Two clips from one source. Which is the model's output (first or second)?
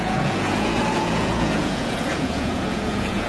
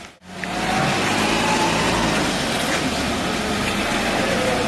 first